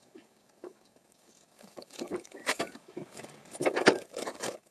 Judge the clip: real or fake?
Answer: fake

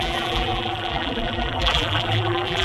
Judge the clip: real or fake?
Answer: fake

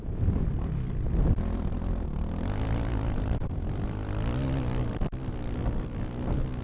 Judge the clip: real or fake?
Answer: real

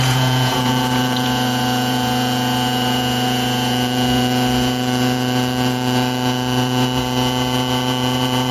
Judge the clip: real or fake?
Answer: fake